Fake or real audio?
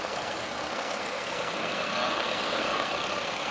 fake